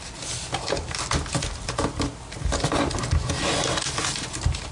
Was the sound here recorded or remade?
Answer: recorded